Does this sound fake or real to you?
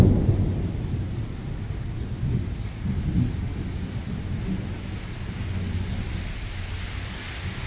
real